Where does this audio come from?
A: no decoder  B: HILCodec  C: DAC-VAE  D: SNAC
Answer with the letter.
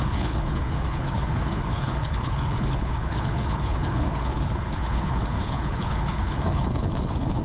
B